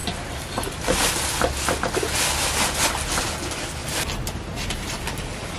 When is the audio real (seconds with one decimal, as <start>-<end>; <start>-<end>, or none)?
0.0-3.8